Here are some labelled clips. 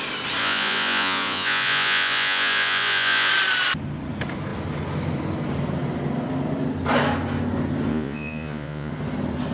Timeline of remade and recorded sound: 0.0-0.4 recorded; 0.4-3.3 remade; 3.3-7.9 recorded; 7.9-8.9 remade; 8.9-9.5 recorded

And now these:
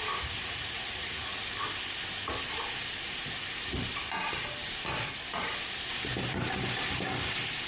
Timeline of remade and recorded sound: 0.0-0.4 recorded; 0.4-1.3 remade; 1.3-7.7 recorded